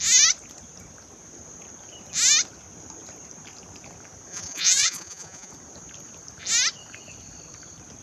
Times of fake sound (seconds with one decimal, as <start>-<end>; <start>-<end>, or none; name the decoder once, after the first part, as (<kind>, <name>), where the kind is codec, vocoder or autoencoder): 4.3-5.5 (vocoder, Vocos)